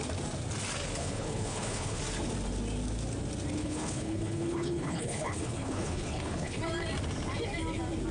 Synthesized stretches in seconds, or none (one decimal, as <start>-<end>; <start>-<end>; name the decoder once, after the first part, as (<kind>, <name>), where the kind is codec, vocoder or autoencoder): 1.0-2.0 (codec, HILCodec); 3.6-6.6